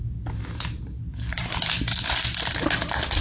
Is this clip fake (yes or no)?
no